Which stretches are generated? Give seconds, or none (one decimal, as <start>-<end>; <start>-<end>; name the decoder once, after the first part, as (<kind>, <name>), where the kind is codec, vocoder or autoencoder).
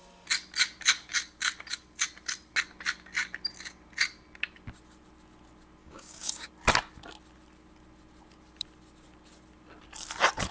5.8-6.5 (codec, DAC)